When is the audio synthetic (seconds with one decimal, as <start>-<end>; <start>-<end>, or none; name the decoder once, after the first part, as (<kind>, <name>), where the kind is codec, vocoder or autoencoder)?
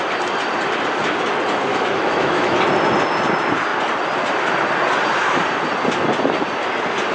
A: 1.7-2.6 (autoencoder, DAC-VAE)